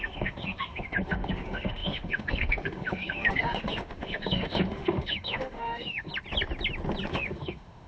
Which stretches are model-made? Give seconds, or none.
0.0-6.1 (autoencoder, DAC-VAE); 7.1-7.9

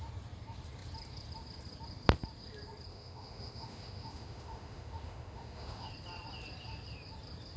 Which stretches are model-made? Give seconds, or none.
2.9-5.9 (autoencoder, DAC-VAE)

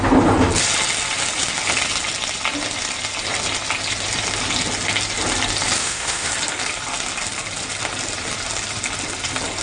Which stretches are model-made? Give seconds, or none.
5.8-6.3 (autoencoder, DAC-VAE)

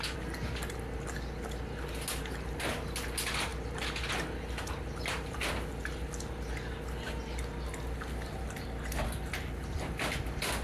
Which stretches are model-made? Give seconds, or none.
none

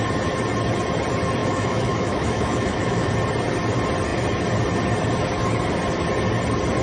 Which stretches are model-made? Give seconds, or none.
1.4-3.1 (autoencoder, DAC-VAE)